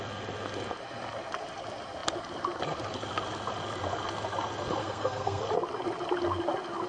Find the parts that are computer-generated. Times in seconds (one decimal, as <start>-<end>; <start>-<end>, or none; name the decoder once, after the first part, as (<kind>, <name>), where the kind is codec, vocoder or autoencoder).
4.8-5.4 (codec, SNAC)